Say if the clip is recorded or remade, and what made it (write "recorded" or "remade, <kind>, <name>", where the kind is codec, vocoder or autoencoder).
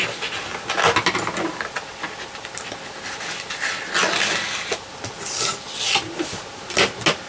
recorded